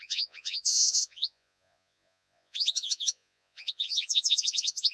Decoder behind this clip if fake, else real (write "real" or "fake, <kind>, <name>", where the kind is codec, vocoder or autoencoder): fake, vocoder, Vocos